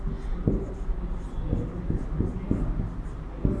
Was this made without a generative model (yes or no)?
yes